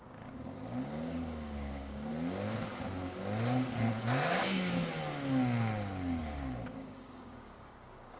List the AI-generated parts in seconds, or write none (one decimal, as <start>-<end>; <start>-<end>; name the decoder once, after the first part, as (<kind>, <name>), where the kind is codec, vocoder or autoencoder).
0.0-2.1 (codec, DAC); 6.2-8.2